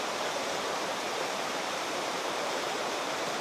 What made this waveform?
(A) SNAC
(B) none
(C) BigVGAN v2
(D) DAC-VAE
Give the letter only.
C